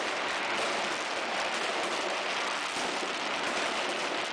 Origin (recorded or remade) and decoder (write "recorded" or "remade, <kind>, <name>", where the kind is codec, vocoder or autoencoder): recorded